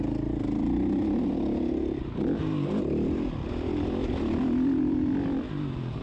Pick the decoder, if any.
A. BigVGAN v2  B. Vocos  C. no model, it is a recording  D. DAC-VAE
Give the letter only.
A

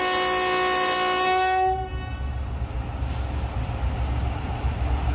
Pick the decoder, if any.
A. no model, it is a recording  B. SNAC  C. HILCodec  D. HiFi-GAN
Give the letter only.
A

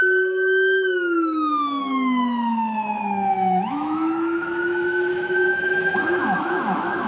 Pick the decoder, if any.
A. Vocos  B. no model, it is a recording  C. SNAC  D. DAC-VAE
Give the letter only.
D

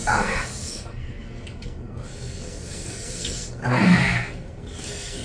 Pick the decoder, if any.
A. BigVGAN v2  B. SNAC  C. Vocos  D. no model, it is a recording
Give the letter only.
B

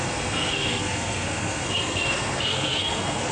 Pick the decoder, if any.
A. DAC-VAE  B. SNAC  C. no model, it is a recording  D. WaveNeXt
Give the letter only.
B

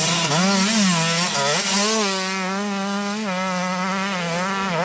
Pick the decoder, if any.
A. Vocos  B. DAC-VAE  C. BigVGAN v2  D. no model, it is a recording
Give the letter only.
D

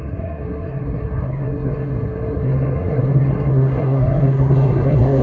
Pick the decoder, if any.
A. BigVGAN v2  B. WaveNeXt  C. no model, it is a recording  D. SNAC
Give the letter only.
D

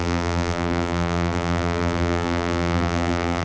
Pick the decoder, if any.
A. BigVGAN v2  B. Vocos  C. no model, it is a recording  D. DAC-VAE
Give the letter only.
A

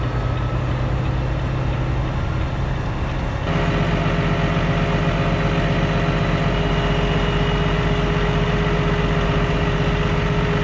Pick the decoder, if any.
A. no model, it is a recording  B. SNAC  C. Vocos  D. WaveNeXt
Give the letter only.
A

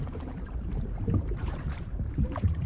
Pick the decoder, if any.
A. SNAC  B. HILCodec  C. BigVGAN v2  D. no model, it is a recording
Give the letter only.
C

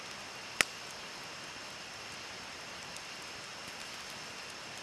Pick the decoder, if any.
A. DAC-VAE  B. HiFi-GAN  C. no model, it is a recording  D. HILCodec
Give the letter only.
C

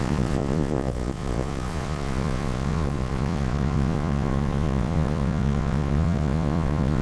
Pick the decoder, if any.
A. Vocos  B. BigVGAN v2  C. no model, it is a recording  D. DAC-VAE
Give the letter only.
A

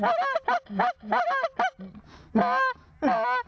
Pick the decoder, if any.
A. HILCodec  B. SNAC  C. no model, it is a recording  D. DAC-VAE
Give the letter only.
C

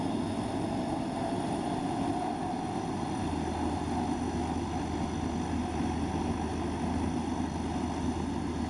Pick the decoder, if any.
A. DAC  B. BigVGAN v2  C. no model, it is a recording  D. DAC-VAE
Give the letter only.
C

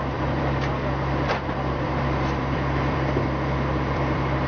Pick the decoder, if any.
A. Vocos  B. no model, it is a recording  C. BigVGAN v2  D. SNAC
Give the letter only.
C